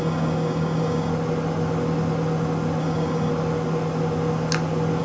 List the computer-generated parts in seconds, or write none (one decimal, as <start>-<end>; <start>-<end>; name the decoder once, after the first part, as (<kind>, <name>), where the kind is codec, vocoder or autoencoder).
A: 0.0-1.1 (codec, DAC); 2.8-3.3